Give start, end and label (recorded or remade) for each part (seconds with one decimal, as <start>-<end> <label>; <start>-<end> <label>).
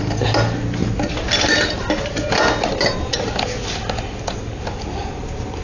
0.0-5.6 recorded